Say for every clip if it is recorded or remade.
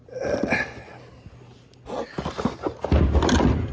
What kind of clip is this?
recorded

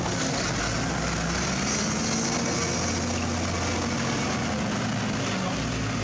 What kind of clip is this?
recorded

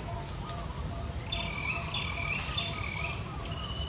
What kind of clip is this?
recorded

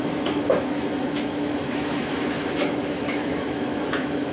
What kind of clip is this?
remade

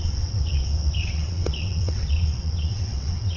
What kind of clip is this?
remade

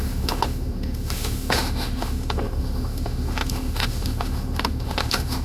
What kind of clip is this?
remade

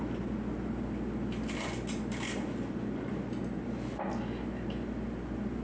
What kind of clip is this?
recorded